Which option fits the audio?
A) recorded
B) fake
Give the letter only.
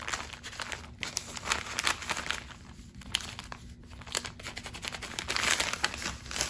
A